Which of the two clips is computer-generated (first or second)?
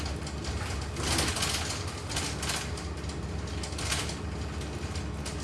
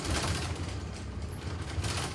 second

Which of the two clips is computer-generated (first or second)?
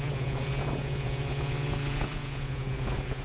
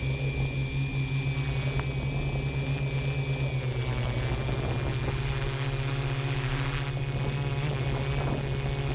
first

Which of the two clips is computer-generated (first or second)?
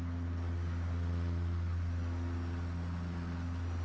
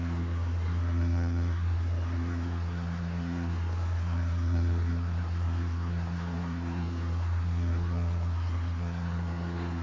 second